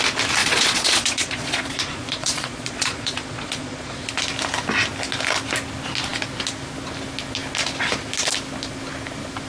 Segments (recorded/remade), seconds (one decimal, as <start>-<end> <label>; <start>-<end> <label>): 0.0-0.4 recorded; 0.4-4.1 remade; 4.1-9.5 recorded